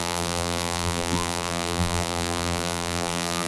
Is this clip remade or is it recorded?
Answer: remade